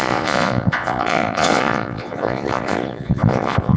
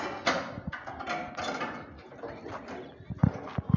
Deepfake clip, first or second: first